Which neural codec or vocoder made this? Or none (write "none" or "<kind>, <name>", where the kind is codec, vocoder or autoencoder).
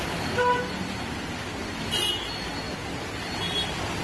none